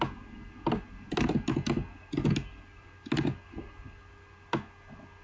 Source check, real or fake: real